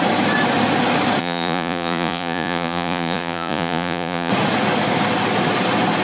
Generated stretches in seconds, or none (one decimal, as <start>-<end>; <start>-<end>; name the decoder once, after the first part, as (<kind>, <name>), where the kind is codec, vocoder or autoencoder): 1.2-4.3 (vocoder, Vocos)